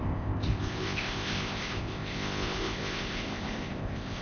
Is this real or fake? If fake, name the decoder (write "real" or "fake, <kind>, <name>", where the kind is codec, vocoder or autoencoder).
fake, codec, ZipCodec